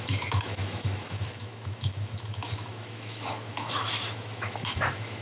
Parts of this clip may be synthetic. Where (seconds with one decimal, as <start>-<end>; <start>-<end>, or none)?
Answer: 0.0-5.2